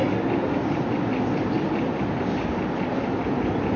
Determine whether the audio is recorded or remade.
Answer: recorded